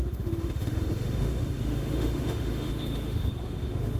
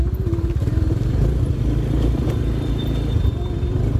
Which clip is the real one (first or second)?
second